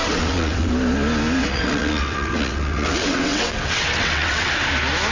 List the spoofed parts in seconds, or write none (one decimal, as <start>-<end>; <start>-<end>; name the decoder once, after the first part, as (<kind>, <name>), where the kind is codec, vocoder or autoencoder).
0.0-0.7 (vocoder, WaveNeXt); 1.4-4.5